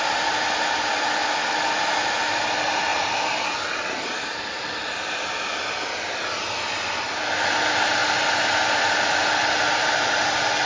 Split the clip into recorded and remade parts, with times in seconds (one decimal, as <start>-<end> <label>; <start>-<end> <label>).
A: 0.0-10.7 recorded